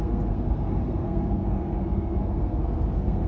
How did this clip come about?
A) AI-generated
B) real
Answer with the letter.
A